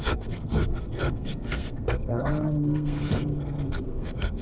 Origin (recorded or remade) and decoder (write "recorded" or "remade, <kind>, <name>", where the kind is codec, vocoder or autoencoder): remade, codec, SNAC